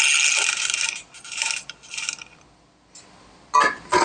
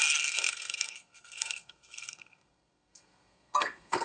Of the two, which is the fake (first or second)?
second